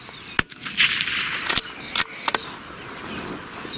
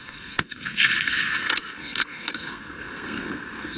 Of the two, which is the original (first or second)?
first